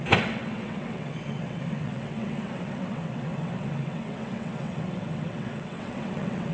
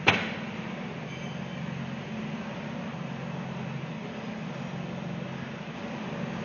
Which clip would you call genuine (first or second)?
second